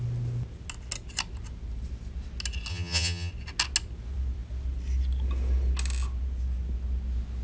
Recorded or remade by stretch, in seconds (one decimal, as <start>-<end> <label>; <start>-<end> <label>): 0.0-2.7 recorded; 2.7-3.3 remade; 3.3-7.4 recorded